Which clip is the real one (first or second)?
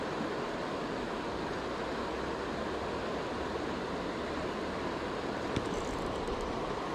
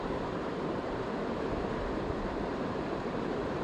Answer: first